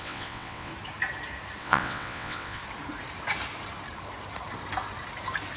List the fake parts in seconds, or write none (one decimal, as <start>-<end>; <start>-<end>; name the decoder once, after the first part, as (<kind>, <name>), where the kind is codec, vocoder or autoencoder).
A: 0.0-0.7 (vocoder, WaveNeXt); 1.6-2.6